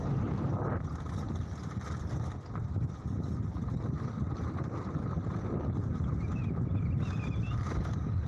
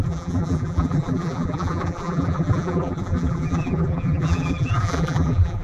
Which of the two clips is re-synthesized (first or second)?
second